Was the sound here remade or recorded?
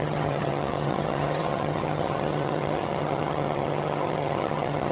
remade